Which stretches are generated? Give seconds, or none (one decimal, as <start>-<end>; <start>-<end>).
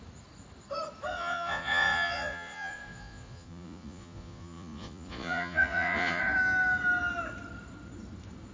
1.1-6.2